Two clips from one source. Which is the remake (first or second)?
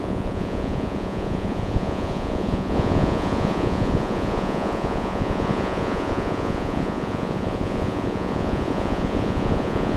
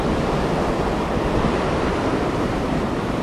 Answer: first